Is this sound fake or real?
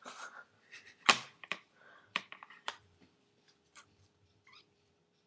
fake